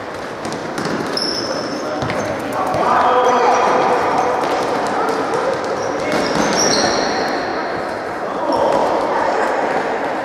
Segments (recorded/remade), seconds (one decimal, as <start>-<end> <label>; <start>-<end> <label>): 0.0-0.6 recorded; 0.6-2.3 remade; 2.3-2.7 recorded; 2.7-6.0 remade; 6.0-7.5 recorded; 7.5-8.4 remade; 8.4-8.8 recorded; 8.8-9.4 remade; 9.4-10.2 recorded